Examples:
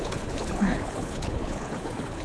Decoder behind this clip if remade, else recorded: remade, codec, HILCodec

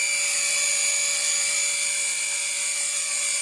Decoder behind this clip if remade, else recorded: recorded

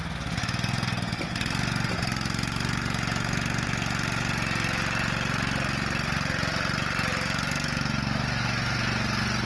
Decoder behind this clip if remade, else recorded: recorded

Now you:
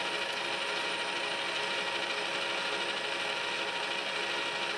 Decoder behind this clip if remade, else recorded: recorded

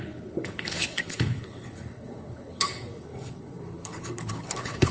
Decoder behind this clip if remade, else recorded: remade, codec, HILCodec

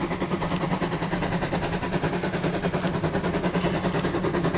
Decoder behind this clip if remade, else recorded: recorded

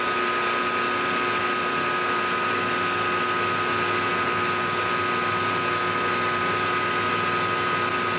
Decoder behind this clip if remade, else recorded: recorded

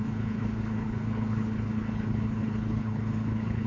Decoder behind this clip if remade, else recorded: remade, codec, HILCodec